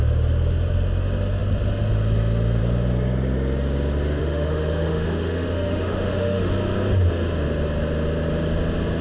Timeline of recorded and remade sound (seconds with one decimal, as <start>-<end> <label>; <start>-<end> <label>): 0.0-4.2 recorded; 4.2-6.5 remade; 6.5-9.0 recorded